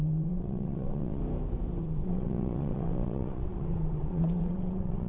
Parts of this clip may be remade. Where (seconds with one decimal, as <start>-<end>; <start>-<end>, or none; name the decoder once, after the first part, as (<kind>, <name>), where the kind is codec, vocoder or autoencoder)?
0.0-1.2 (vocoder, WaveNeXt); 1.8-5.1